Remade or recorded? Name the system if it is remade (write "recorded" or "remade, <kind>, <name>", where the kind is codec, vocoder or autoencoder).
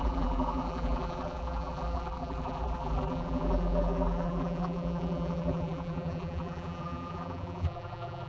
remade, vocoder, BigVGAN v2